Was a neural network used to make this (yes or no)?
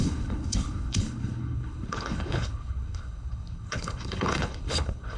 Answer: yes